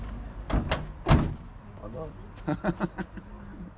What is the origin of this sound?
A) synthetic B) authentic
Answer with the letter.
B